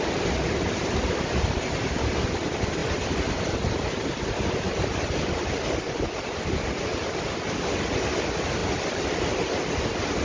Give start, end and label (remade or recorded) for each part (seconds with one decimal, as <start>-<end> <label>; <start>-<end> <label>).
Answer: 0.0-10.2 recorded